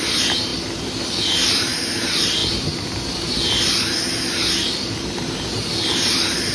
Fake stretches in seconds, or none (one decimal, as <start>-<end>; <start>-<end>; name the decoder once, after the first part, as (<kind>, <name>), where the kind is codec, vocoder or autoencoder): none